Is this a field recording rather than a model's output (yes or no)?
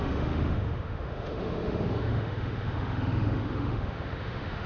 no